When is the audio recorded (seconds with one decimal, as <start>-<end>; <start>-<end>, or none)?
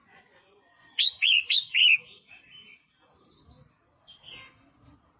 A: 1.8-5.2